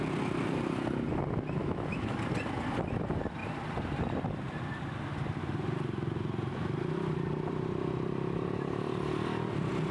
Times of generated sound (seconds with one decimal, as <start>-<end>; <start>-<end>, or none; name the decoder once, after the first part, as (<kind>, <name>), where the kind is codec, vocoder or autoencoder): 1.6-2.2 (autoencoder, DAC-VAE)

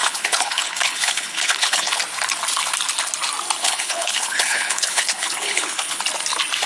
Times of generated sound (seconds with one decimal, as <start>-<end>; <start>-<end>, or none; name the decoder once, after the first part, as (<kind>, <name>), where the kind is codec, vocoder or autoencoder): 0.0-2.0 (codec, HILCodec); 3.6-6.0

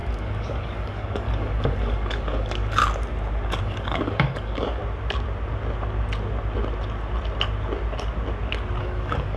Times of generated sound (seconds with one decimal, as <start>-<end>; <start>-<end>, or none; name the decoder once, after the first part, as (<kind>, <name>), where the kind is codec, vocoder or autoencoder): 0.0-2.8 (codec, DAC); 3.6-4.8; 8.8-9.4

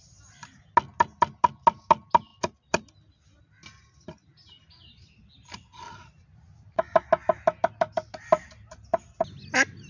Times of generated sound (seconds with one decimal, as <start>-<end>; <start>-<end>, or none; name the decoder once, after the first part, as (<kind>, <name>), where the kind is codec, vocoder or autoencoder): none